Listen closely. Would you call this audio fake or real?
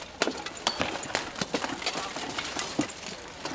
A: real